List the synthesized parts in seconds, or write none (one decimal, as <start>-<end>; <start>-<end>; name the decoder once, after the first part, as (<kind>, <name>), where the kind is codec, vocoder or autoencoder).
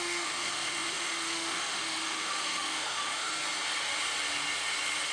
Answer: 0.0-3.3 (autoencoder, DAC-VAE)